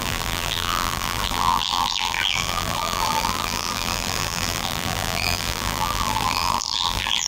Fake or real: fake